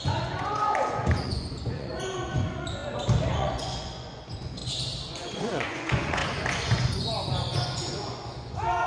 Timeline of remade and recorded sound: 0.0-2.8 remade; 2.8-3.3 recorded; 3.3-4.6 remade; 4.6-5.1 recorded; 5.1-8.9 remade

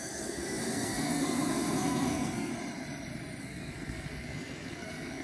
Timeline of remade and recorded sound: 0.0-2.5 remade; 2.5-3.4 recorded; 3.4-5.2 remade

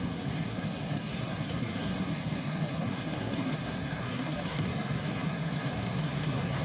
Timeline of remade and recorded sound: 0.0-6.6 remade

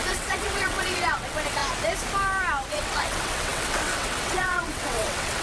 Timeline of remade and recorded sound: 0.0-1.6 remade; 1.6-2.7 recorded; 2.7-5.4 remade

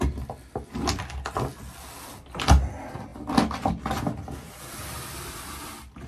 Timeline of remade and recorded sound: 0.0-6.1 recorded

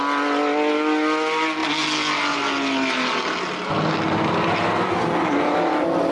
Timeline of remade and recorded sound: 0.0-6.1 recorded